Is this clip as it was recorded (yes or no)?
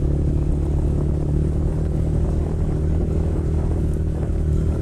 no